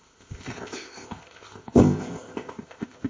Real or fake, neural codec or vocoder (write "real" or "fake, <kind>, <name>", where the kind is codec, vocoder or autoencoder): fake, codec, ZipCodec